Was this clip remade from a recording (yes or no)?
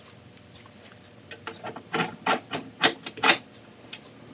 no